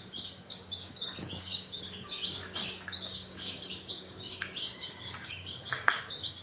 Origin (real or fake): fake